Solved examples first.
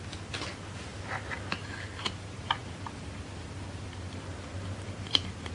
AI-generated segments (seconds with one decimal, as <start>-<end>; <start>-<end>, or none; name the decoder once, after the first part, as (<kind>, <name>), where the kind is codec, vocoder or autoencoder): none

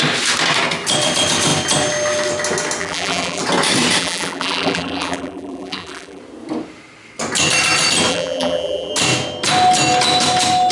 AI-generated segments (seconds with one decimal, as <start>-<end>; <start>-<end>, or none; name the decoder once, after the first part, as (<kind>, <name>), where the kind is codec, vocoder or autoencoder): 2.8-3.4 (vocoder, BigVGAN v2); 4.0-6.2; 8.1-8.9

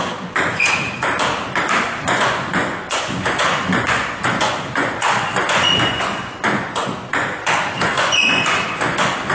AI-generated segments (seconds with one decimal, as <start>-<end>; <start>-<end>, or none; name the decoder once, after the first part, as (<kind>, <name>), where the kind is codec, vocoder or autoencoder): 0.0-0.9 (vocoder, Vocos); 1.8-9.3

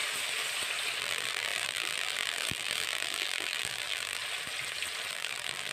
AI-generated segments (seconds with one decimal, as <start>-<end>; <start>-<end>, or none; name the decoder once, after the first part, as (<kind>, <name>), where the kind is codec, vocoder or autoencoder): 1.0-4.2 (vocoder, BigVGAN v2); 5.1-5.7